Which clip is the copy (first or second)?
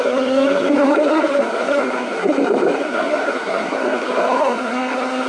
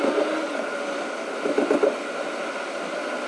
first